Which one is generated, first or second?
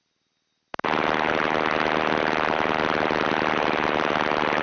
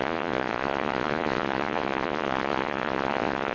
second